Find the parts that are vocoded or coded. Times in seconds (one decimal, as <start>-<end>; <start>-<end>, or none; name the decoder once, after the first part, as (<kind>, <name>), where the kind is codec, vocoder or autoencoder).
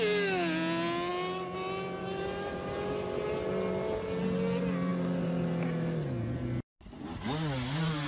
none